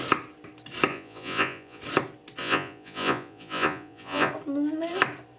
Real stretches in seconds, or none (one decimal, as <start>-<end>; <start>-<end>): 0.0-0.9; 1.8-2.4; 4.3-5.4